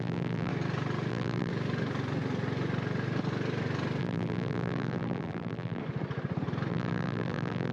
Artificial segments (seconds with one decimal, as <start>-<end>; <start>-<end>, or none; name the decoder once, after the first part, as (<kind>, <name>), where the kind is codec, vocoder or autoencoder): 0.0-0.5 (vocoder, BigVGAN v2); 1.1-1.5; 4.0-5.8; 6.7-7.7